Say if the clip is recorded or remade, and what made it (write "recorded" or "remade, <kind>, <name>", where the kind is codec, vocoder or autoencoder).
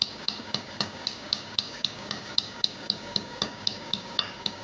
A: remade, codec, DAC